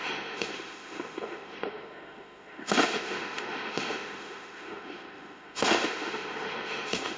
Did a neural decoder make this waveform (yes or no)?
yes